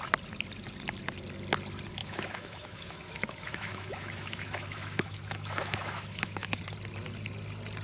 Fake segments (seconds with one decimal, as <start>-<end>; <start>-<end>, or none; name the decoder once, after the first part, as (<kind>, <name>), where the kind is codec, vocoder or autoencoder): 2.0-6.6 (autoencoder, DAC-VAE)